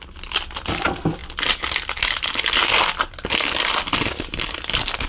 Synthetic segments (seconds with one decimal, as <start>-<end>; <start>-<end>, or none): none